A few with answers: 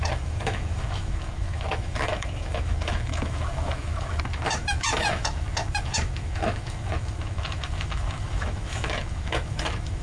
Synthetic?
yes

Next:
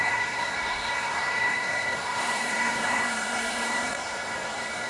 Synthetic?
yes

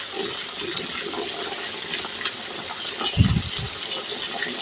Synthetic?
no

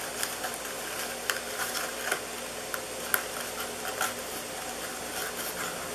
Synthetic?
no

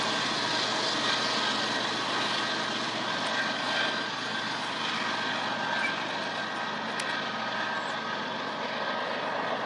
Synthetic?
no